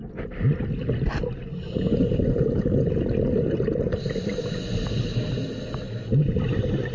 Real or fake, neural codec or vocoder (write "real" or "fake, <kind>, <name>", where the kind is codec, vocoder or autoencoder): real